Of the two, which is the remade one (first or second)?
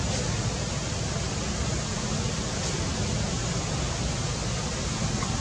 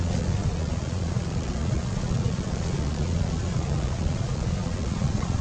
second